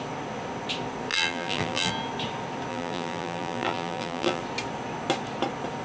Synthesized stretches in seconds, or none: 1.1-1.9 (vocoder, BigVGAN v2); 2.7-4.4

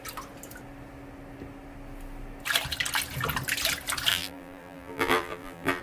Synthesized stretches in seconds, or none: 4.1-5.8 (vocoder, BigVGAN v2)

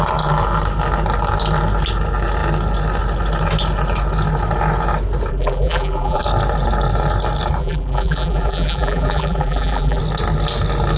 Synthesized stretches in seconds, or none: 5.3-6.2 (vocoder, BigVGAN v2); 7.6-10.0

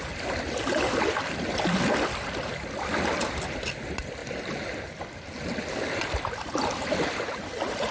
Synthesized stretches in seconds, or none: 0.0-7.9 (vocoder, BigVGAN v2)

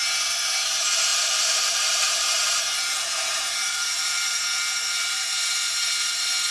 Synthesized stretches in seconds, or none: 1.1-4.4 (vocoder, BigVGAN v2)

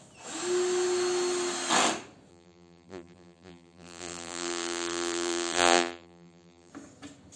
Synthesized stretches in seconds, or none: 2.3-6.7 (vocoder, BigVGAN v2)